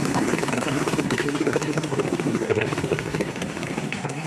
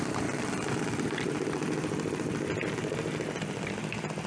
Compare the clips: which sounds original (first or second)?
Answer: second